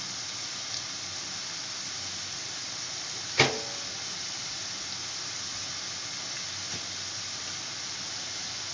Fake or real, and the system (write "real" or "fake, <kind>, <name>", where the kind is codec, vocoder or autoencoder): real